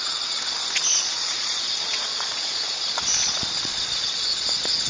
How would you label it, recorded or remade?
remade